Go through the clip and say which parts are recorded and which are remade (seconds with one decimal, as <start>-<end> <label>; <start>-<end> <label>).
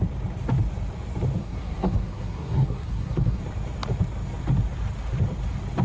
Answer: 0.0-1.4 recorded; 1.4-3.4 remade; 3.4-5.8 recorded